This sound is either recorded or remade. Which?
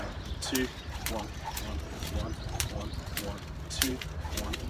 remade